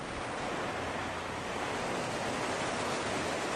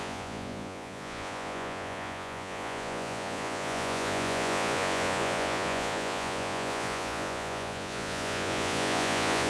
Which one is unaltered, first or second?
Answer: first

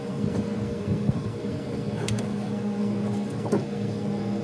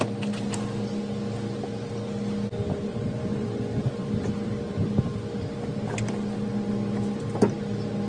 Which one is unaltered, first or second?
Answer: second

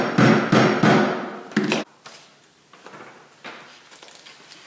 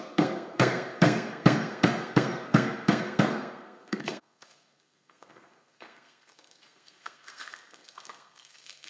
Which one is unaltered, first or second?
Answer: first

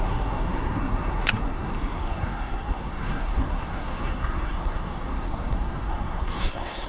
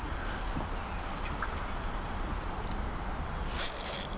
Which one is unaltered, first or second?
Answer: second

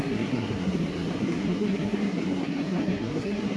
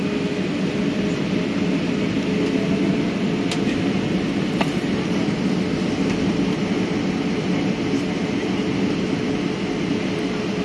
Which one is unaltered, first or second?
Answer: second